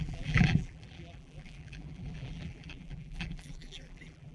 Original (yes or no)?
no